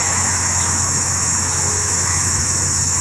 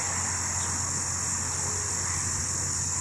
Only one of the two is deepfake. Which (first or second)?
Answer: first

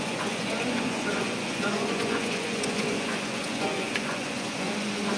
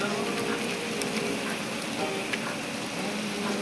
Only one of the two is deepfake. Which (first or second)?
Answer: first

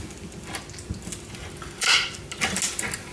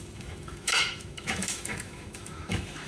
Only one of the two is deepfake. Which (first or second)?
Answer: second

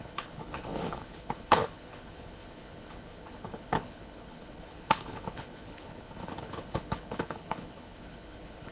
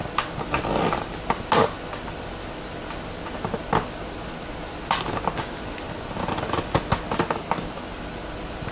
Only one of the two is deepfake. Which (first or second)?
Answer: first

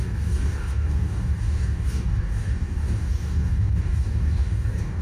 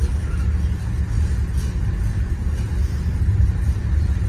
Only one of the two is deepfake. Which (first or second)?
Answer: first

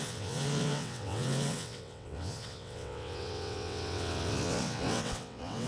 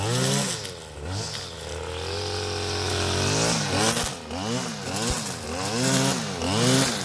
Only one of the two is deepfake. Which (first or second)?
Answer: first